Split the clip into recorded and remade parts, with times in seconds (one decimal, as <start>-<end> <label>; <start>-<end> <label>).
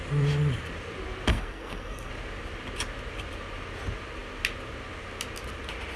0.0-1.3 recorded; 1.3-2.1 remade; 2.1-6.0 recorded